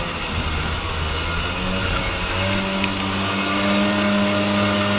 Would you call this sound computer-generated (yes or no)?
no